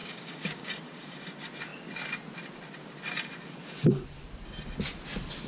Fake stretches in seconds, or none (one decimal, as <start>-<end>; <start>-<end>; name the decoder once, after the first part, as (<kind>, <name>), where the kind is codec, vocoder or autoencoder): 0.0-0.7 (codec, DAC)